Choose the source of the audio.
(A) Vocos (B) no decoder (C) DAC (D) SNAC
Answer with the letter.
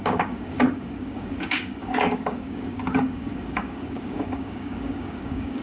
C